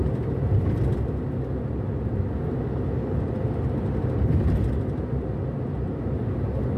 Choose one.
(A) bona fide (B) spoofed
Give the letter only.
A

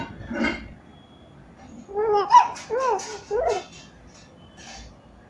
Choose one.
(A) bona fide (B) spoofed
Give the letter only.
A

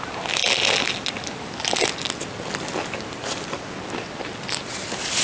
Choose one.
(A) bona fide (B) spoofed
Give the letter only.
A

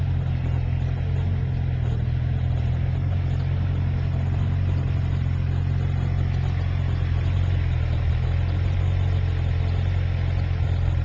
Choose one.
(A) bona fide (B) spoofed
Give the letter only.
A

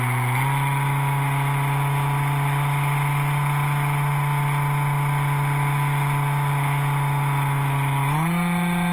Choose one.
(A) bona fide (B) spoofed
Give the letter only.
A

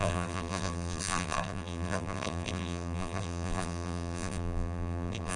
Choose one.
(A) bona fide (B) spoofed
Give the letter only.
B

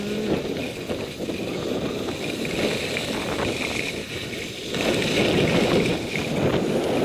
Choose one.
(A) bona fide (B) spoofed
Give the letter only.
A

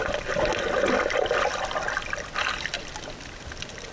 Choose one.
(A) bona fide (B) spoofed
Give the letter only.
A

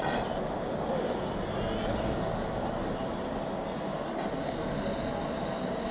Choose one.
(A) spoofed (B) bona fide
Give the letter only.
B